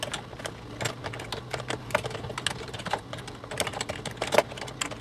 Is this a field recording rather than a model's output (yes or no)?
yes